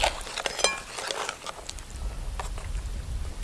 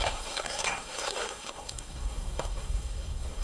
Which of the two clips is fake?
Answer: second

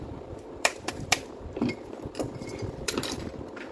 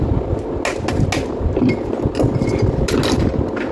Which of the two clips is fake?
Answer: first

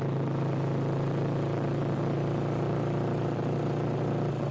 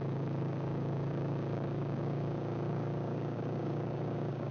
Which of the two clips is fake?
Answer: second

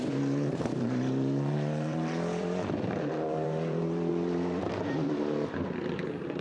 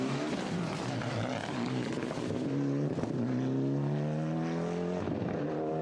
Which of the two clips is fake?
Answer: first